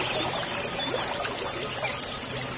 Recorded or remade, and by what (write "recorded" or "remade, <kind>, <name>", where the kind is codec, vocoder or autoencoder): recorded